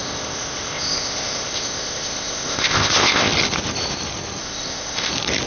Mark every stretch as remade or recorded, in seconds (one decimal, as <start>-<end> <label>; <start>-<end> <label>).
0.0-3.3 remade; 3.3-4.4 recorded; 4.4-5.1 remade; 5.1-5.5 recorded